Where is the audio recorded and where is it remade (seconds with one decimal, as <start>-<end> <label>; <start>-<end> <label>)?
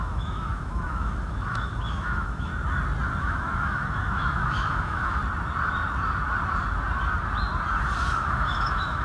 0.0-2.5 remade; 2.5-3.2 recorded; 3.2-5.2 remade; 5.2-8.0 recorded; 8.0-9.0 remade